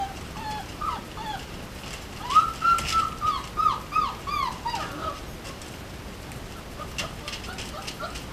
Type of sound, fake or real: real